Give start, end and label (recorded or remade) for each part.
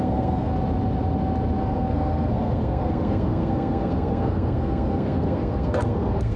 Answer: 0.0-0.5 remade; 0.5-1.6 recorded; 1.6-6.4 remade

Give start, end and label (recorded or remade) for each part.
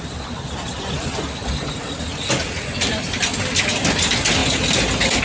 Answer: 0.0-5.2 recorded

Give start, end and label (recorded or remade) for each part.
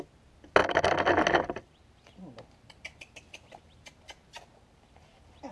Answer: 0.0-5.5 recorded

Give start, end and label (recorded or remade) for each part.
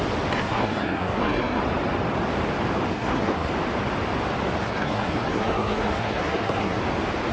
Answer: 0.0-0.4 recorded; 0.4-1.6 remade; 1.6-2.9 recorded; 2.9-3.5 remade; 3.5-4.6 recorded; 4.6-6.8 remade; 6.8-7.3 recorded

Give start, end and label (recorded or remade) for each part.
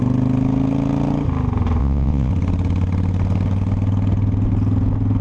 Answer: 0.0-1.8 recorded; 1.8-2.3 remade; 2.3-5.2 recorded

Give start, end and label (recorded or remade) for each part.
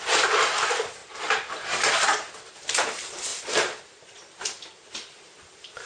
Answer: 0.0-1.0 remade; 1.0-2.5 recorded; 2.5-3.3 remade; 3.3-4.9 recorded; 4.9-5.9 remade